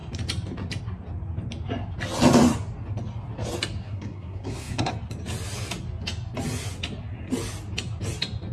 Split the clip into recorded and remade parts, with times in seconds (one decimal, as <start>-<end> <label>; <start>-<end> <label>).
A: 0.0-3.8 recorded; 3.8-4.9 remade; 4.9-8.5 recorded